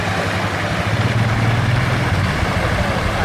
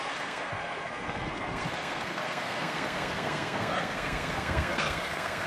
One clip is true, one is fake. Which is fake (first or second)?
second